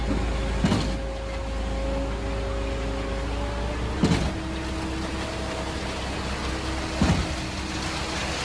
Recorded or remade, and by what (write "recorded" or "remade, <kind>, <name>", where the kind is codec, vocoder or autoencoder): recorded